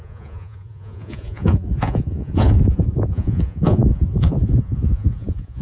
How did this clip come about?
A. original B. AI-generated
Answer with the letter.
B